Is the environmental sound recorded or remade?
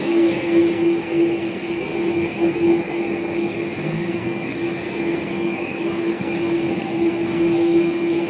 remade